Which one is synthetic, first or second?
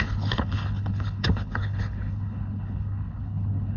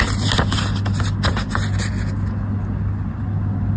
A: first